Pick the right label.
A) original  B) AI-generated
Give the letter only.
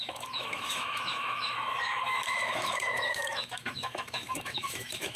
B